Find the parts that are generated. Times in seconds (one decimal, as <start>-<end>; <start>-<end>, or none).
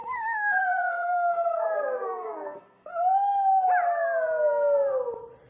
0.0-2.9